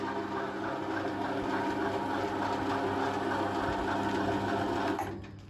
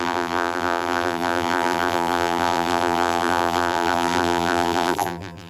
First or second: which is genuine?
first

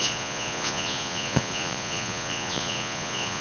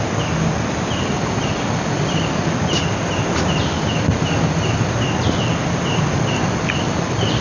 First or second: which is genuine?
second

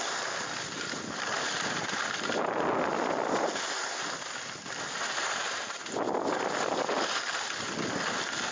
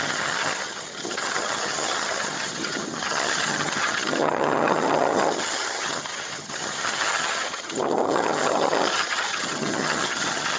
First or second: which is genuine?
first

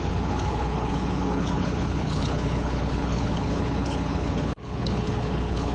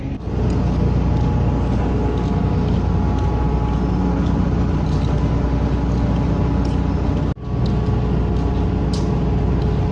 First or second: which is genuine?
second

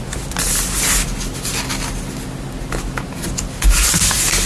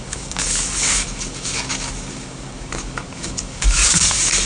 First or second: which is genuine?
first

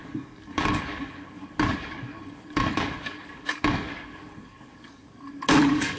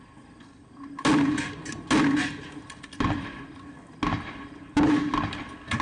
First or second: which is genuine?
second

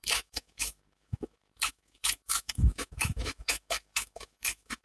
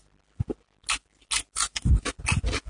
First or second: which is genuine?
second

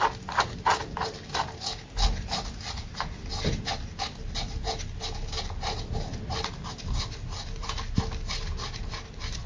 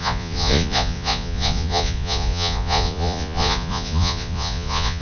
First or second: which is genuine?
first